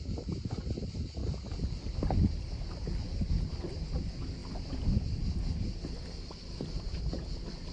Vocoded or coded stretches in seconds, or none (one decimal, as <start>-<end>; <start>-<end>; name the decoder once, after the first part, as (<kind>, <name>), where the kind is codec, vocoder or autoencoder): none